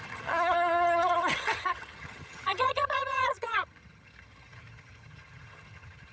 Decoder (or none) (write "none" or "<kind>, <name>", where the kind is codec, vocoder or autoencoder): vocoder, HiFi-GAN